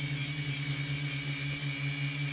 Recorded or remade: recorded